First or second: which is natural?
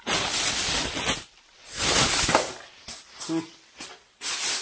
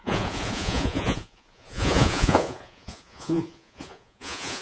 first